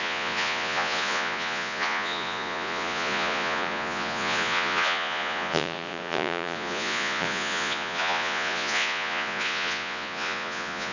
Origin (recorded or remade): remade